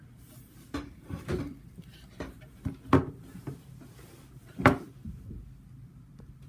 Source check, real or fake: fake